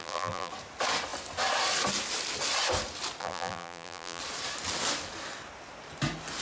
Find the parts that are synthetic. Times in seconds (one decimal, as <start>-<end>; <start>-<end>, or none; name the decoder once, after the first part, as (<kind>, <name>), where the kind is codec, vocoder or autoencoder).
0.0-0.5 (vocoder, BigVGAN v2); 3.2-4.2